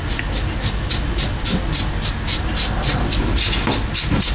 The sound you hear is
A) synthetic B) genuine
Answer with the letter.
B